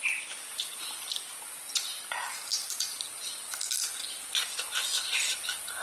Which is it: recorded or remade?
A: recorded